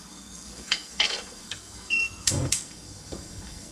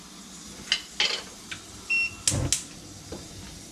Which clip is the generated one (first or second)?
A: first